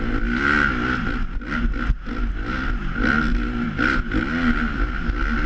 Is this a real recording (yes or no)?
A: yes